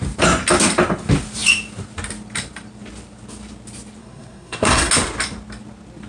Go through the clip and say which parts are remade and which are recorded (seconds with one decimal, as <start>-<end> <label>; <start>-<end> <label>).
0.0-4.0 recorded; 4.0-4.9 remade; 4.9-6.1 recorded